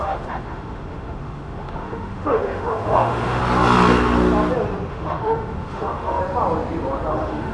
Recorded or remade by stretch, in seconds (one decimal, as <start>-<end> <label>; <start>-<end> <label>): 0.0-3.4 remade; 3.4-4.9 recorded; 4.9-6.2 remade; 6.2-7.1 recorded; 7.1-7.5 remade

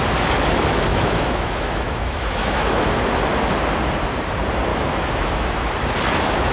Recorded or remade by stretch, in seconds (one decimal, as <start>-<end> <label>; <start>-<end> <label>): 0.0-0.9 recorded; 0.9-2.8 remade; 2.8-4.7 recorded; 4.7-5.7 remade; 5.7-6.5 recorded

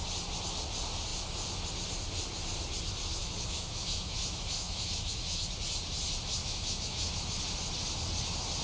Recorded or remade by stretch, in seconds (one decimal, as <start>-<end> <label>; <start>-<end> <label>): 0.0-3.2 recorded; 3.2-5.5 remade; 5.5-6.4 recorded; 6.4-7.4 remade; 7.4-8.6 recorded

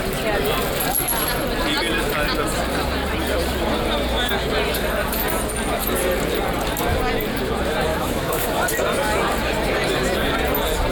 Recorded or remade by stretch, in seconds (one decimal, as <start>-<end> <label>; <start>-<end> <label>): 0.0-7.9 recorded; 7.9-8.6 remade; 8.6-10.9 recorded